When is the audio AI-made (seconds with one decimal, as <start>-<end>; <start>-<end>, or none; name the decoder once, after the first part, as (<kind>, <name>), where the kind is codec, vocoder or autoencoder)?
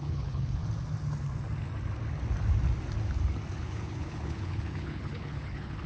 0.0-0.6 (codec, HILCodec); 3.5-5.9